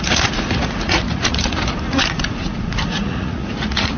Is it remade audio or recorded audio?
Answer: remade